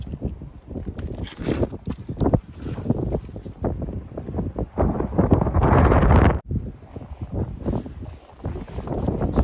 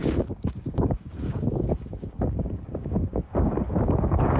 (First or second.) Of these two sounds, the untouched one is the first